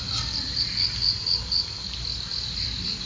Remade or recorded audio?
recorded